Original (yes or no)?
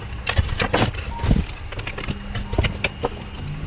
yes